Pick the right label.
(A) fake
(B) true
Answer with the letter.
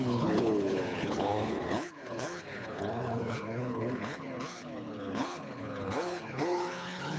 A